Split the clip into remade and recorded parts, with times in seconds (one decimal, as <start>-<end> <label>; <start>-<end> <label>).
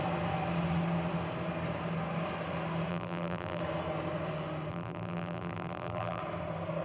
0.0-2.9 recorded; 2.9-3.6 remade; 3.6-4.7 recorded; 4.7-6.2 remade; 6.2-6.8 recorded